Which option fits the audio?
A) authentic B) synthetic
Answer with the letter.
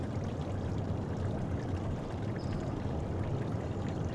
A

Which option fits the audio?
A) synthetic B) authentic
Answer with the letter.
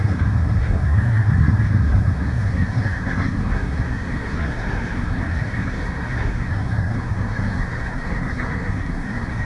A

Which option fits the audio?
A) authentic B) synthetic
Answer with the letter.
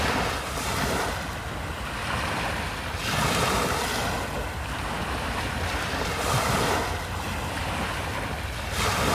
A